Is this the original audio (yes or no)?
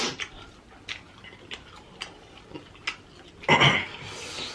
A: yes